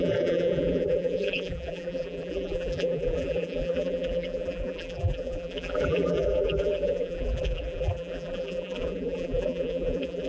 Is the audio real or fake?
fake